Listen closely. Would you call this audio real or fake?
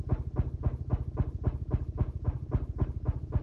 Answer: real